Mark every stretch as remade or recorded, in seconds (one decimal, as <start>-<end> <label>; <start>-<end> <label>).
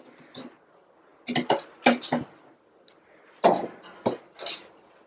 0.0-5.1 recorded